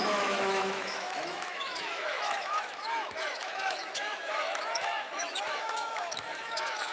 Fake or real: fake